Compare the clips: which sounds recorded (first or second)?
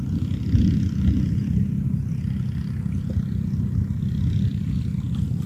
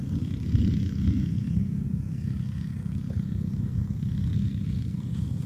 first